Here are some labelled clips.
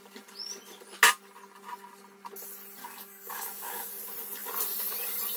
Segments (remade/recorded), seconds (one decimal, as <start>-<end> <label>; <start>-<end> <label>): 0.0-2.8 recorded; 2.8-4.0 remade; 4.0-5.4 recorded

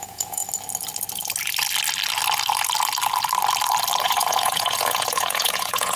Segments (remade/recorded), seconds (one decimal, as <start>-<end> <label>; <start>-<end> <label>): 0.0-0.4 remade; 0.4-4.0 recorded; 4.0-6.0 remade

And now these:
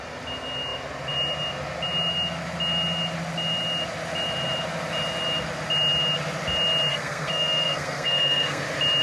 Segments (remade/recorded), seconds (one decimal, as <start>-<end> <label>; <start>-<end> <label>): 0.0-6.9 recorded; 6.9-8.6 remade; 8.6-9.0 recorded

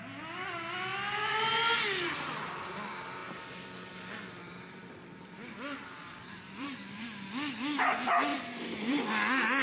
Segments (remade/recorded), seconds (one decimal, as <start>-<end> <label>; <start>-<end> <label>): 0.0-3.2 recorded; 3.2-7.3 remade; 7.3-8.3 recorded; 8.3-9.1 remade; 9.1-9.6 recorded